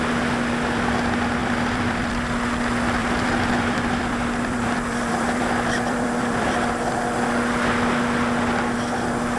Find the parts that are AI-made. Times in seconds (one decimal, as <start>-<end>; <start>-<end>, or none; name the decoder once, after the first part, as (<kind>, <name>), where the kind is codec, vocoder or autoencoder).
1.4-2.1 (vocoder, BigVGAN v2); 3.0-6.7

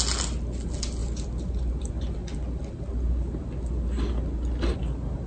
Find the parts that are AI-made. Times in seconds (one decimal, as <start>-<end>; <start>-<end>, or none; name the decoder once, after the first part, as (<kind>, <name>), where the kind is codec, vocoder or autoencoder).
1.0-1.9 (vocoder, BigVGAN v2)

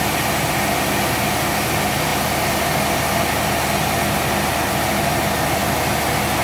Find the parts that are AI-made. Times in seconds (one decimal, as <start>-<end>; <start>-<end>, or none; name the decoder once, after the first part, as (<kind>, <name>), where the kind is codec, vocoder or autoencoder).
none

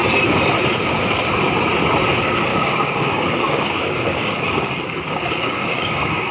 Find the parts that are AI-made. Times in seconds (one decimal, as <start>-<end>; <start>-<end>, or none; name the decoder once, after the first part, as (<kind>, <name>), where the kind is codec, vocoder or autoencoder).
2.5-6.3 (codec, DAC)

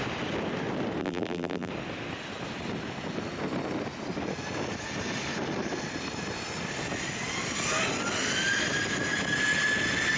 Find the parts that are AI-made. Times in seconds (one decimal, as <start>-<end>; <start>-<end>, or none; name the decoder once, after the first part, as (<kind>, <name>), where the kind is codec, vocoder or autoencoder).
1.0-1.7 (vocoder, BigVGAN v2)

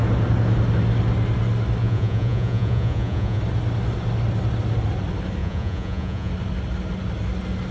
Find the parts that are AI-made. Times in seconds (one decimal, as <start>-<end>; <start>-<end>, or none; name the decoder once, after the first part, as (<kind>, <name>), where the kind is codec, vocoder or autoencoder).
1.8-3.4 (vocoder, Vocos); 5.4-6.3